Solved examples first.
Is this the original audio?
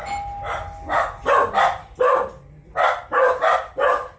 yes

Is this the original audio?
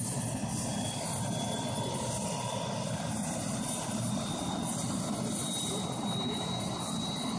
no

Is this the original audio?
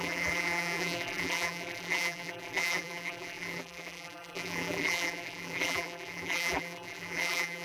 no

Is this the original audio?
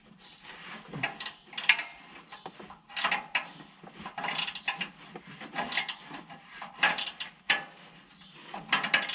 yes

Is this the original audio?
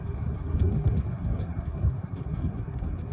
no